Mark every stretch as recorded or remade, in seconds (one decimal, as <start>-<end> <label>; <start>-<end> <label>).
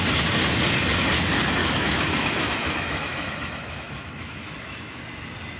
0.0-1.6 recorded; 1.6-5.0 remade; 5.0-5.6 recorded